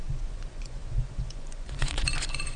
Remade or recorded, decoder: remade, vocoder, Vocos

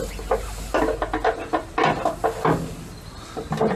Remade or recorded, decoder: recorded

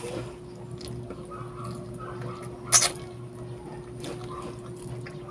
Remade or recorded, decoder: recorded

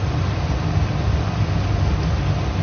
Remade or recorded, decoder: recorded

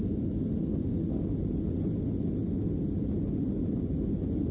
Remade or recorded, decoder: recorded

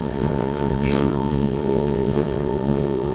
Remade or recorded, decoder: remade, vocoder, WaveNeXt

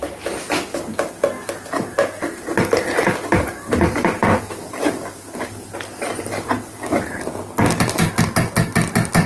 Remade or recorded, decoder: recorded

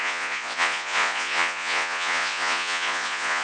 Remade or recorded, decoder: remade, vocoder, Vocos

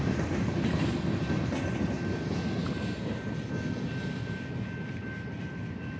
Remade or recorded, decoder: recorded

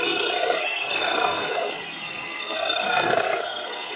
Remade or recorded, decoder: remade, codec, SNAC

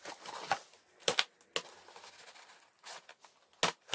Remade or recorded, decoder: recorded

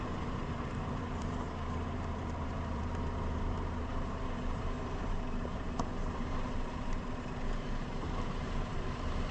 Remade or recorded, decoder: remade, vocoder, BigVGAN v2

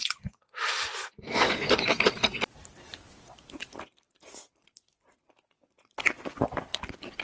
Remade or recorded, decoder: recorded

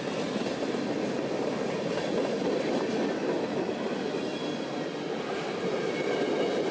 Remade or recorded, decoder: recorded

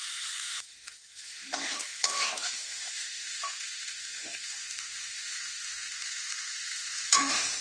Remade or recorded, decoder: remade, autoencoder, DAC-VAE